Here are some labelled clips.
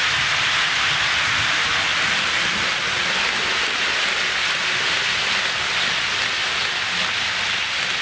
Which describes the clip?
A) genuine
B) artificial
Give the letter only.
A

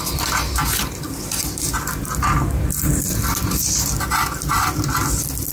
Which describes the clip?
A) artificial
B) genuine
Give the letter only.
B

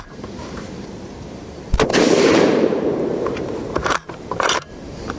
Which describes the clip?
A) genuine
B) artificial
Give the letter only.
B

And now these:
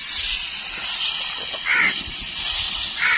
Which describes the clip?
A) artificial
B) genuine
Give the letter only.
B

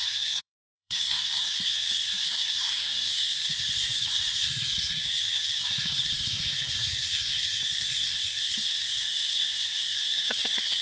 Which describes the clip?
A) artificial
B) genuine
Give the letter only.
A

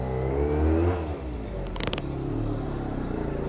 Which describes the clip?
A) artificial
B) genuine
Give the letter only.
B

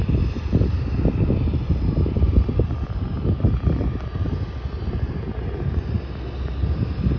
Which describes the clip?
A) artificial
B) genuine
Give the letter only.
B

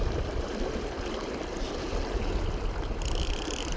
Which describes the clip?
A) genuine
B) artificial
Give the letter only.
A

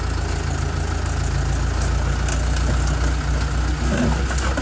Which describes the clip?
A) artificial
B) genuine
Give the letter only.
B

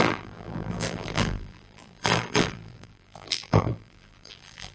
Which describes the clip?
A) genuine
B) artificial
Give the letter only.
B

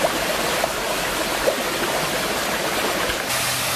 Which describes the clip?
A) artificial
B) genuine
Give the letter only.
B